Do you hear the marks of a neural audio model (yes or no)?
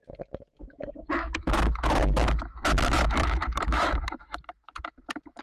yes